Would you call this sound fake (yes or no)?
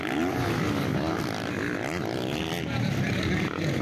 no